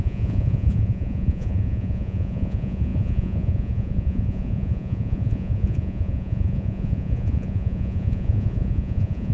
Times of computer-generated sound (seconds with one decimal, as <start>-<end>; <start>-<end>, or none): 0.0-9.3

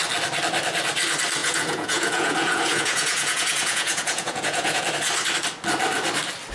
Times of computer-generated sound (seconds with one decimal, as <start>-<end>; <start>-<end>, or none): 1.4-4.8

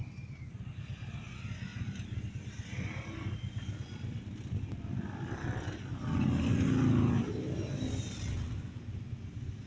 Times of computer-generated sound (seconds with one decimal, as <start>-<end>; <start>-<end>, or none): none

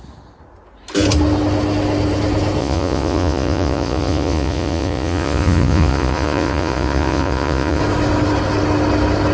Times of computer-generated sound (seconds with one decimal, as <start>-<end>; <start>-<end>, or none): 2.6-7.8

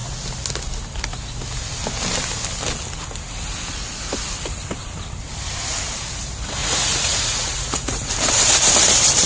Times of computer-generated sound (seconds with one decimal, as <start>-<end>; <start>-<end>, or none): 6.6-8.1